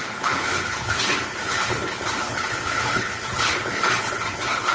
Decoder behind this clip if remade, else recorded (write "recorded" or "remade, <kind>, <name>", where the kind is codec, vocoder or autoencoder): remade, codec, HILCodec